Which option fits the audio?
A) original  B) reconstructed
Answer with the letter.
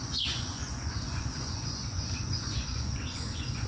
B